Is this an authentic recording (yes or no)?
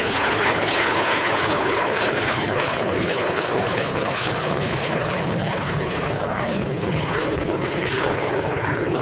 no